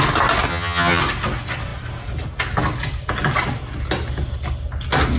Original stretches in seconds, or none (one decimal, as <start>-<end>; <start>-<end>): 0.0-0.5; 1.0-5.2